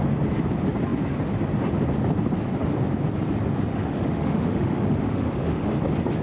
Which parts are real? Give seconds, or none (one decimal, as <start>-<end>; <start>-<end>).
0.0-3.7; 5.8-6.2